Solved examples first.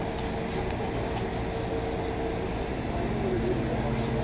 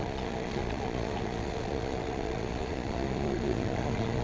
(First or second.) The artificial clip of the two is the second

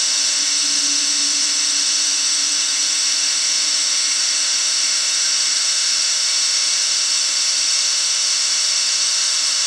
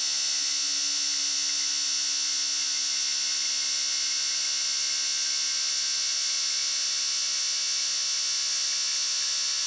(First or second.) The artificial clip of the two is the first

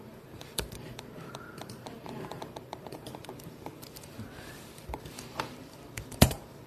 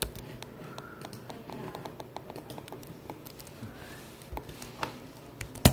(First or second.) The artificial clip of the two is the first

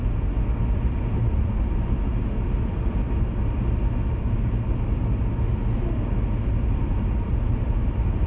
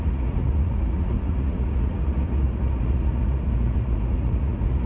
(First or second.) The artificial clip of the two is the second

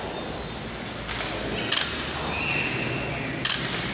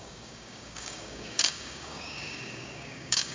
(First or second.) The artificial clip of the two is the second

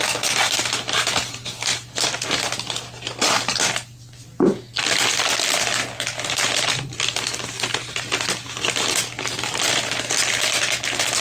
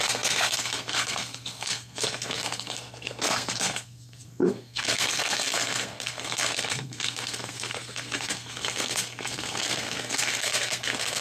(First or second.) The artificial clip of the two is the second